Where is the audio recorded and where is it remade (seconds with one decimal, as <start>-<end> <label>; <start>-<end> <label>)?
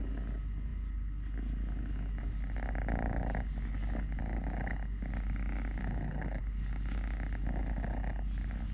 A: 0.0-5.8 recorded; 5.8-6.4 remade; 6.4-8.7 recorded